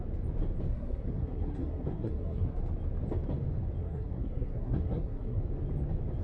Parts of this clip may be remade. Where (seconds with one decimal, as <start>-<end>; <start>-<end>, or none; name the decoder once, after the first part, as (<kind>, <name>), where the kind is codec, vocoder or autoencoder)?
0.7-2.6 (codec, SNAC); 3.8-5.4